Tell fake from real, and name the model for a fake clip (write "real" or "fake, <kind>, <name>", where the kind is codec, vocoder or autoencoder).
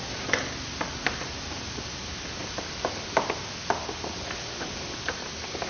real